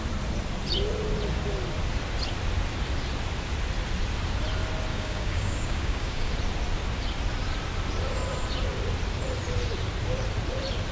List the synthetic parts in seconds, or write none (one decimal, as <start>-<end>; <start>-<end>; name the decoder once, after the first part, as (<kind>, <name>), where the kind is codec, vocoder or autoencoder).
4.9-6.3 (codec, DAC)